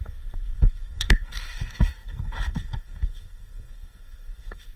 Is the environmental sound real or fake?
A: fake